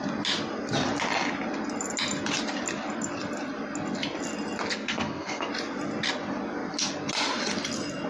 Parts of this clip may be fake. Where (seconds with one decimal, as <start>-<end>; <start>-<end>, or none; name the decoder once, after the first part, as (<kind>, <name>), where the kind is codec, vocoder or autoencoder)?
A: 4.7-5.5 (codec, SNAC)